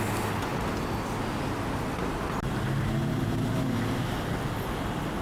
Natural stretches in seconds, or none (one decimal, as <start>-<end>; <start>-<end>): 0.0-5.2